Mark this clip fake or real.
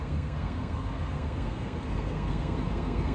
fake